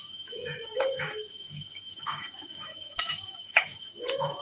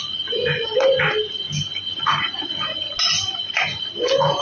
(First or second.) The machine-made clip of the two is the first